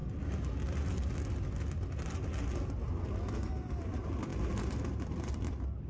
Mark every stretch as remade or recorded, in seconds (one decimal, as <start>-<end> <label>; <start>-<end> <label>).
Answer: 0.0-3.5 recorded; 3.5-5.9 remade